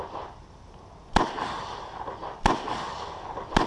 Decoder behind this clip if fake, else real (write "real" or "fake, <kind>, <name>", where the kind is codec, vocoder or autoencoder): real